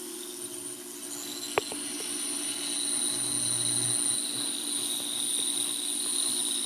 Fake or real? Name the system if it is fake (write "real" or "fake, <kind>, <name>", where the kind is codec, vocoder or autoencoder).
real